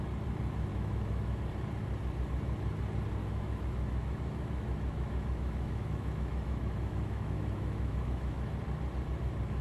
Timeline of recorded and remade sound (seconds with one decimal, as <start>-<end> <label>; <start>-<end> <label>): 0.0-0.7 recorded; 0.7-1.4 remade; 1.4-3.2 recorded; 3.2-8.5 remade; 8.5-9.6 recorded